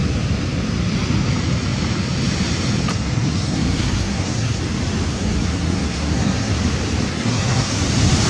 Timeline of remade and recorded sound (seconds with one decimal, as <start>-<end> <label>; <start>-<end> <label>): 0.0-2.9 recorded; 2.9-4.6 remade; 4.6-5.1 recorded; 5.1-6.5 remade; 6.5-7.1 recorded; 7.1-7.8 remade; 7.8-8.3 recorded